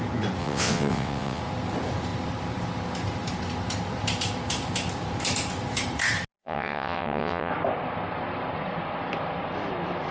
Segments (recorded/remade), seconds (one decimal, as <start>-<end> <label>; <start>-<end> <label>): 0.0-0.4 recorded; 0.4-1.4 remade; 1.4-6.4 recorded; 6.4-7.5 remade; 7.5-10.1 recorded